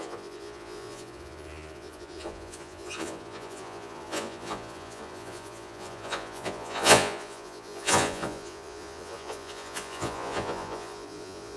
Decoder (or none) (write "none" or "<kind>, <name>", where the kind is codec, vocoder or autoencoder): vocoder, Vocos